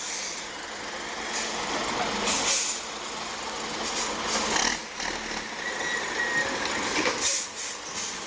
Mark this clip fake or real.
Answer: real